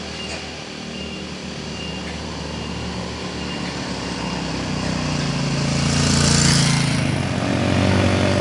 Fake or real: real